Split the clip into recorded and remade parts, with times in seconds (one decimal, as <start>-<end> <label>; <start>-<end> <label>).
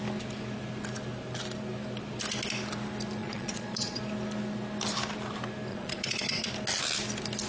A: 0.0-3.2 recorded; 3.2-4.0 remade; 4.0-5.7 recorded; 5.7-6.5 remade; 6.5-7.5 recorded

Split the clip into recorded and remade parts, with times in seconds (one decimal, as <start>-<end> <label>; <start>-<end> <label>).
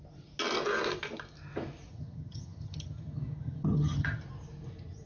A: 0.0-1.9 recorded; 1.9-4.2 remade; 4.2-5.1 recorded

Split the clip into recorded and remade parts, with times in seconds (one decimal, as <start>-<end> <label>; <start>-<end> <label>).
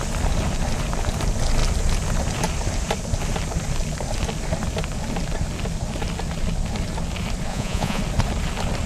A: 0.0-7.5 recorded; 7.5-8.0 remade; 8.0-8.9 recorded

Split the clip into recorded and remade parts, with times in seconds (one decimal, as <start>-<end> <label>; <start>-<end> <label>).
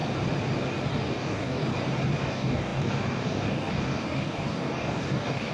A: 0.0-0.9 recorded; 0.9-1.7 remade; 1.7-2.2 recorded; 2.2-5.5 remade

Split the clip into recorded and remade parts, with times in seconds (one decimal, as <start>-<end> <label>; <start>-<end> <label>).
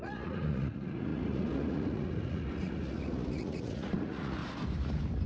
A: 0.0-4.4 remade; 4.4-5.3 recorded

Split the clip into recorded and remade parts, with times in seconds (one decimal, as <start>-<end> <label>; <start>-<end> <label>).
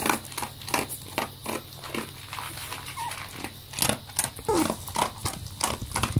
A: 0.0-6.2 recorded